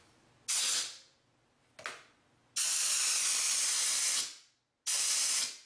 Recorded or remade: recorded